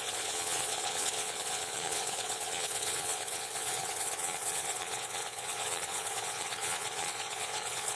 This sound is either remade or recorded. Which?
remade